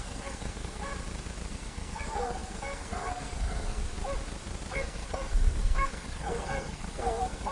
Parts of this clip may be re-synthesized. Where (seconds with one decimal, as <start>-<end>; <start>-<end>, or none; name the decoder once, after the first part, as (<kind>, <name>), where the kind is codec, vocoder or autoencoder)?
0.0-0.9 (codec, SNAC); 1.5-3.9; 4.7-7.5